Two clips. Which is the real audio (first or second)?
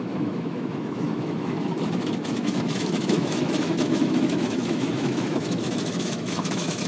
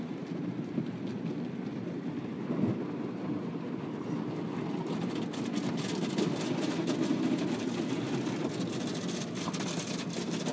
second